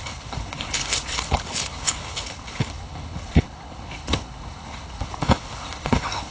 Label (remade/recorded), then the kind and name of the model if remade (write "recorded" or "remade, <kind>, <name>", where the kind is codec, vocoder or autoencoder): remade, codec, HILCodec